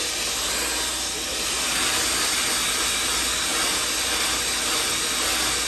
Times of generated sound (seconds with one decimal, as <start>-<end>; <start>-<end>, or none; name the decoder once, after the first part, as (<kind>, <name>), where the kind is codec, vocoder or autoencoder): none